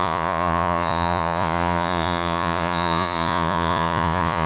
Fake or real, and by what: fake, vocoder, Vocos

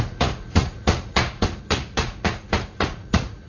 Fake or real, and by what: fake, vocoder, Vocos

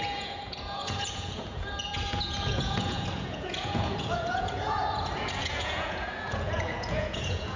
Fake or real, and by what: fake, vocoder, Vocos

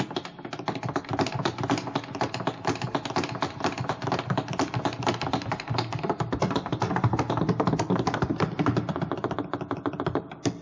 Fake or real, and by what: real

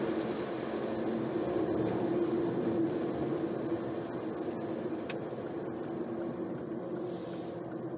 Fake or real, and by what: real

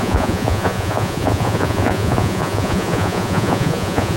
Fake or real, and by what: fake, vocoder, Vocos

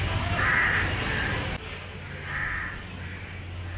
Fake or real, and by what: real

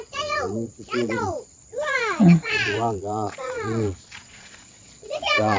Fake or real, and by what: fake, vocoder, Vocos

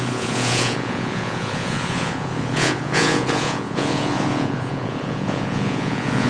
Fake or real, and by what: fake, vocoder, Vocos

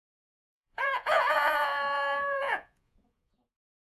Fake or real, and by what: fake, vocoder, Vocos